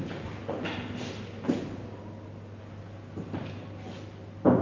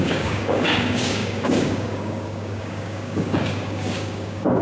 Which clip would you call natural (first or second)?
first